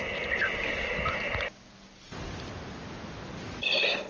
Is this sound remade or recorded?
recorded